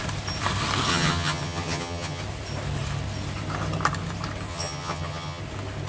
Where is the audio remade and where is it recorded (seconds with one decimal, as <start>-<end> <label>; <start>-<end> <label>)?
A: 0.0-0.9 recorded; 0.9-2.2 remade; 2.2-4.5 recorded; 4.5-5.4 remade; 5.4-5.9 recorded